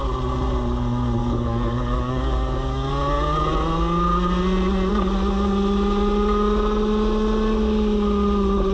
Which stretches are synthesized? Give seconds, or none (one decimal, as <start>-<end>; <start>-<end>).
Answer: 1.2-2.9

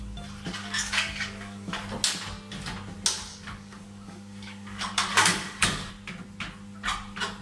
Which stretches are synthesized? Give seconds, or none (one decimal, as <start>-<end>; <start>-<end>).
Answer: 0.6-1.8; 3.3-5.9

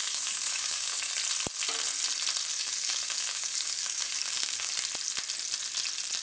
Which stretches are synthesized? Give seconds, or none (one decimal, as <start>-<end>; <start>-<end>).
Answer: 0.0-1.1; 2.5-4.7

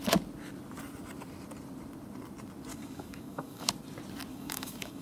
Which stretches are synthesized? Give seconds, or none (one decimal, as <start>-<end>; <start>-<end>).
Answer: 2.7-3.7; 4.3-5.0

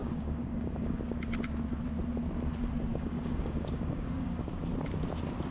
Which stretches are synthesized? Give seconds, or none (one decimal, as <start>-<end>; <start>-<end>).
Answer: 0.0-1.0; 2.9-4.5

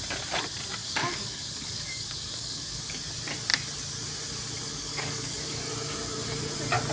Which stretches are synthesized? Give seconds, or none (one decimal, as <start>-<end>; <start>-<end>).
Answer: 0.8-3.0; 4.7-5.7

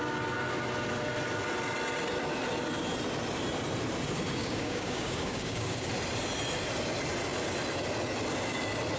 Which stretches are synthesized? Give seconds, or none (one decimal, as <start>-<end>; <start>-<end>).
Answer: 4.4-5.9

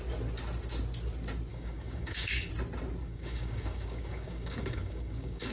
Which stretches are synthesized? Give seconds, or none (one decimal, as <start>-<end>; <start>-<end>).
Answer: 1.5-2.5; 3.0-5.5